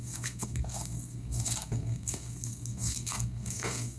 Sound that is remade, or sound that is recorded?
remade